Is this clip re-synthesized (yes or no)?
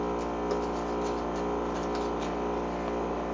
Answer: no